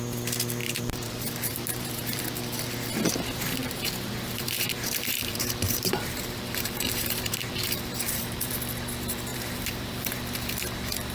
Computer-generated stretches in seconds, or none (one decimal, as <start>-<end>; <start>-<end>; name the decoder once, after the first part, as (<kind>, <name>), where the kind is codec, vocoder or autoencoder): 0.6-2.2 (vocoder, BigVGAN v2); 3.6-8.5; 9.3-10.2